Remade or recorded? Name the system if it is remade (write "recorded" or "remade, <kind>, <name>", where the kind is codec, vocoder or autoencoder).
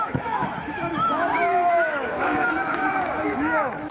remade, autoencoder, DAC-VAE